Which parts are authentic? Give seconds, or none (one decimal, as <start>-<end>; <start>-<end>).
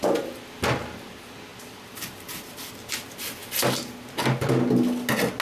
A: 0.0-1.5; 2.5-5.4